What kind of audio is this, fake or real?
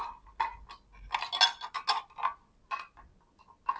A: real